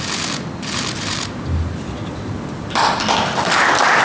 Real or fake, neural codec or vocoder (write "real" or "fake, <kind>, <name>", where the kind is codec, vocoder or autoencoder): real